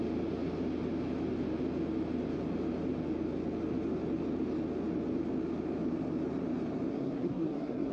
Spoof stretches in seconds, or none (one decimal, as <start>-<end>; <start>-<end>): 6.9-7.9